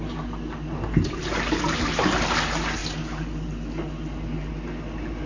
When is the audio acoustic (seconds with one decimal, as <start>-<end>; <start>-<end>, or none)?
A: 0.0-5.3